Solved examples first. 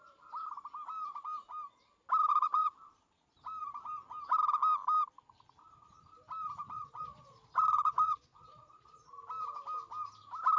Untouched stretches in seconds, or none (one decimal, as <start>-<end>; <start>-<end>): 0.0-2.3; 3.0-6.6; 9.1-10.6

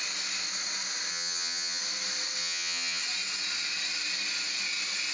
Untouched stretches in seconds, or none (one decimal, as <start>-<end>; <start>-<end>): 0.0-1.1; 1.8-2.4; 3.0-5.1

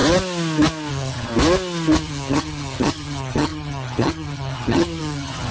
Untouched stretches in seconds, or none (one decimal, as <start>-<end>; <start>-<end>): 0.0-0.9; 1.3-2.0

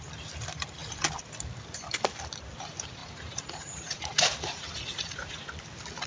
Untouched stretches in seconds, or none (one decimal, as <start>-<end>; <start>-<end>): 0.0-3.0; 5.5-6.1

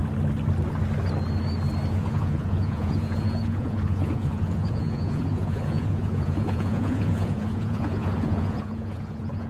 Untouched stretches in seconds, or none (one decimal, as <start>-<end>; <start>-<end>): 0.0-1.9

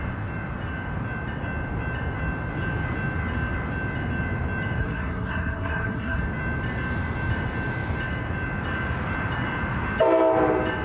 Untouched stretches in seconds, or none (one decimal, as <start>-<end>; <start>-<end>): 0.0-4.8; 6.2-10.8

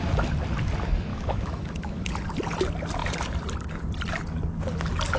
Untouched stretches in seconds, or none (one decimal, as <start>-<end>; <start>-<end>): 0.0-1.1; 2.1-5.2

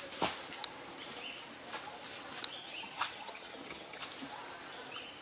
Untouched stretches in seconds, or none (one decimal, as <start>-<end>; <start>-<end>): 0.0-2.6; 4.0-5.2